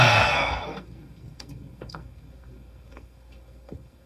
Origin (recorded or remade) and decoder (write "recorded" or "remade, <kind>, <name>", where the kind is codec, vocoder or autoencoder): remade, codec, SNAC